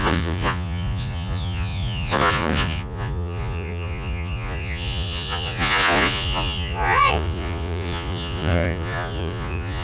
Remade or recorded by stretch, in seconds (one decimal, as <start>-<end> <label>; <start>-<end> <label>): 0.0-9.8 remade